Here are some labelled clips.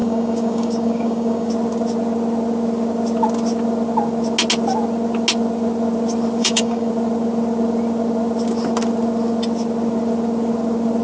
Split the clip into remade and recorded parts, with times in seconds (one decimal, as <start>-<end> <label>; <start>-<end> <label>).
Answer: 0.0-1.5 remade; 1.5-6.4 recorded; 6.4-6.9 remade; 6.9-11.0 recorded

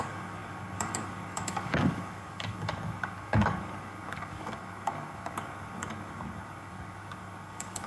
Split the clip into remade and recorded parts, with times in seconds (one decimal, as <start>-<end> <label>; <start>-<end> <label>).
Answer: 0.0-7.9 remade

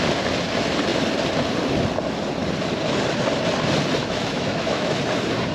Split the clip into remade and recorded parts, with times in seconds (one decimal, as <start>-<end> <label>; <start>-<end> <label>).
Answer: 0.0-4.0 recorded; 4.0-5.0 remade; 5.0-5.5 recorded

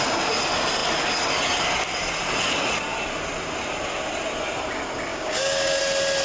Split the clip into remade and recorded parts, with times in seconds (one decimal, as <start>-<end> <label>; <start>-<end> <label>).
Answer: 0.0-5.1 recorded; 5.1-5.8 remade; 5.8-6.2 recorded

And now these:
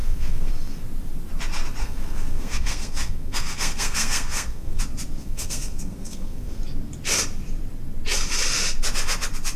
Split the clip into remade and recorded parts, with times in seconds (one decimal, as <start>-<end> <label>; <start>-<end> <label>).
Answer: 0.0-0.5 remade; 0.5-1.8 recorded; 1.8-4.8 remade; 4.8-5.2 recorded; 5.2-6.6 remade; 6.6-9.6 recorded